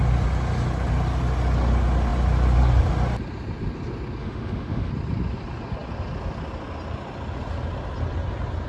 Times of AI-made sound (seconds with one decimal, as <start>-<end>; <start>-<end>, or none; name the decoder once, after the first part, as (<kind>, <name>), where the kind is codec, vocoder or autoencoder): 4.2-4.9 (autoencoder, DAC-VAE)